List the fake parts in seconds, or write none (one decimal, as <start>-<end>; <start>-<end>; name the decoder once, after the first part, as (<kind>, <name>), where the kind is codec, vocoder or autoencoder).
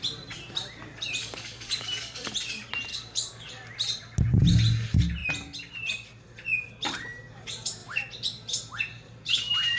1.2-2.3 (codec, DAC); 2.9-3.5